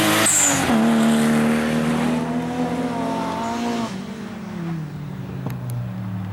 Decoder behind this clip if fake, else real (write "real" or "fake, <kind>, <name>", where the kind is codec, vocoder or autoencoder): real